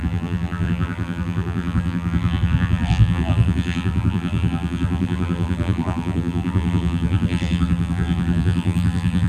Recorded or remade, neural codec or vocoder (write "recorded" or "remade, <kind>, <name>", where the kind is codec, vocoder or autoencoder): remade, vocoder, BigVGAN v2